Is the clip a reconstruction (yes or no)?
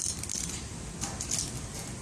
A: no